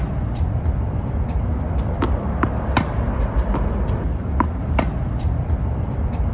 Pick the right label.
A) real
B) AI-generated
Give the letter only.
B